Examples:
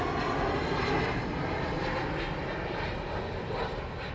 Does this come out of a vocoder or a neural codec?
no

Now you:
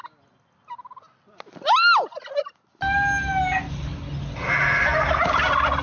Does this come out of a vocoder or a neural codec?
no